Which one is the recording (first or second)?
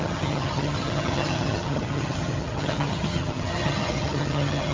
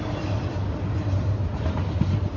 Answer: second